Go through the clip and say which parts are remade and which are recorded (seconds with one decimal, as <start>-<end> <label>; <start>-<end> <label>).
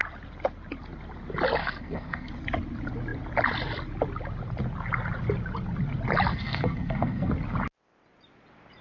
0.0-1.6 recorded; 1.6-2.3 remade; 2.3-6.3 recorded; 6.3-7.3 remade; 7.3-8.8 recorded